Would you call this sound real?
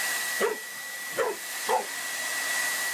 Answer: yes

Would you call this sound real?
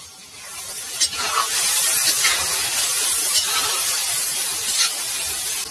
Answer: yes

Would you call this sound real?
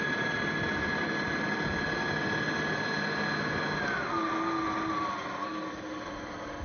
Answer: yes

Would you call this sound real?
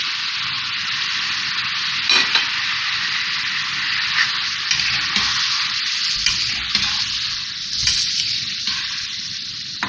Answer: yes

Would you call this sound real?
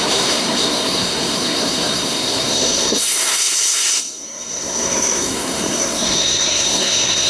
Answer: no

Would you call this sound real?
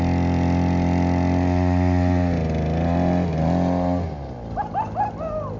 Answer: yes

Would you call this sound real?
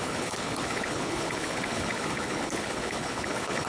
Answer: no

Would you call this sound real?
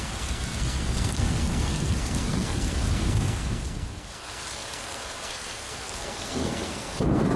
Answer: no